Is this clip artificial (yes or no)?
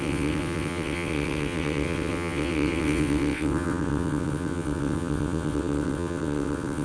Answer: yes